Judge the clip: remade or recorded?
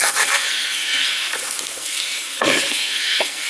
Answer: remade